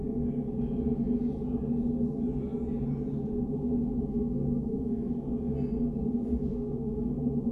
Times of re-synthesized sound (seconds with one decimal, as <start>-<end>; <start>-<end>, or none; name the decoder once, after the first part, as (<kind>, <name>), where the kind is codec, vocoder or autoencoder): 4.1-5.1 (codec, SNAC); 6.5-7.1